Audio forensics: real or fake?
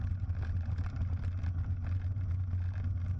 real